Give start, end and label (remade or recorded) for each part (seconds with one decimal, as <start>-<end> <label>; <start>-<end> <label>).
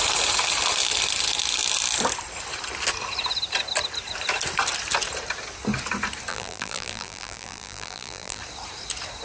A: 0.0-6.3 recorded; 6.3-8.4 remade; 8.4-9.2 recorded